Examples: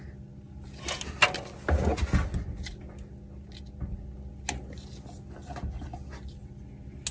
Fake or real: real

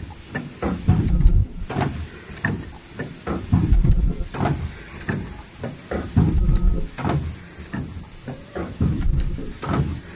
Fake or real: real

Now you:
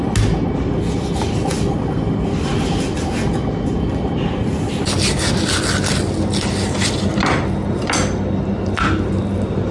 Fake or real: real